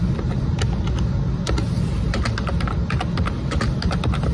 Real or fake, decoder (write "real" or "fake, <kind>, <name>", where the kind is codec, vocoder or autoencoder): real